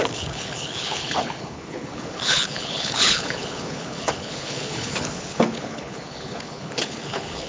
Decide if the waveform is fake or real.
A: fake